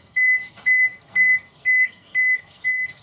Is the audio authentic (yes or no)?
no